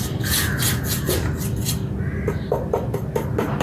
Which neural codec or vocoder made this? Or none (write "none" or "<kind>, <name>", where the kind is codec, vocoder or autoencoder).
none